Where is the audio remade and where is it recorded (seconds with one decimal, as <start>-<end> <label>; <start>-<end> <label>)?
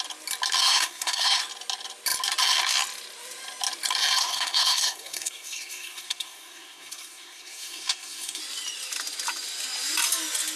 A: 0.0-0.6 recorded; 0.6-1.4 remade; 1.4-4.2 recorded; 4.2-8.4 remade; 8.4-10.6 recorded